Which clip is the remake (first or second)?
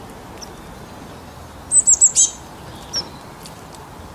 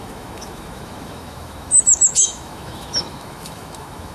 second